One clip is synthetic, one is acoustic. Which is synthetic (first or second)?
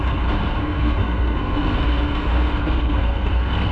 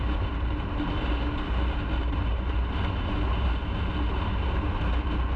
first